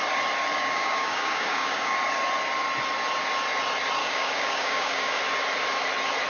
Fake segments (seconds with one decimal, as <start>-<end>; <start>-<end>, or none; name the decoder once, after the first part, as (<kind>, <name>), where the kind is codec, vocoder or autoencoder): 0.5-1.9 (codec, DAC); 4.0-5.2